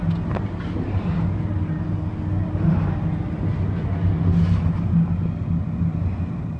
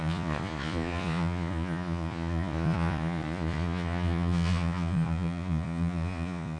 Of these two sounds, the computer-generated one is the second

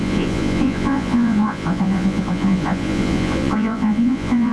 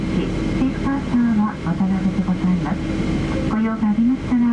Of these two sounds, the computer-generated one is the first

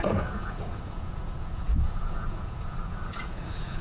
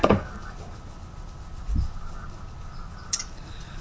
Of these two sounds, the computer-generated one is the first